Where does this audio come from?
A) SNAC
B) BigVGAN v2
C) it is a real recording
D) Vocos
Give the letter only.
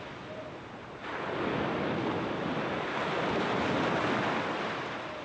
C